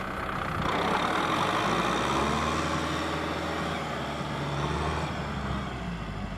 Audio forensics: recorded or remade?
recorded